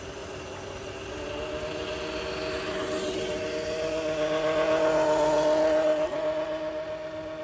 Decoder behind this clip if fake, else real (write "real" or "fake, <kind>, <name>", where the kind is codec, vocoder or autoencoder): real